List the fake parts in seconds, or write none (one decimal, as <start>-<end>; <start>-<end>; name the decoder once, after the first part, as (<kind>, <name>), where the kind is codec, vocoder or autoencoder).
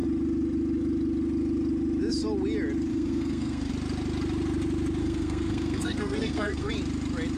2.9-3.7 (codec, SNAC); 5.0-6.7